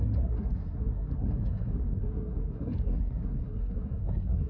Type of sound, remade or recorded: remade